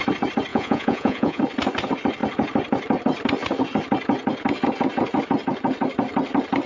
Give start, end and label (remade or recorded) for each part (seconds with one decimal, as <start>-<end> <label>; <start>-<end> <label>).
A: 0.0-0.5 recorded; 0.5-1.4 remade; 1.4-6.7 recorded